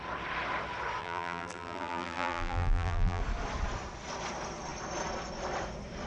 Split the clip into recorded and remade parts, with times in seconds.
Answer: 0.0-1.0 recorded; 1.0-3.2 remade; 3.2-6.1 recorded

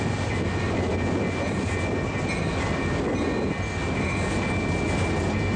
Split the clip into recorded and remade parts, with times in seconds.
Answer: 0.0-5.6 recorded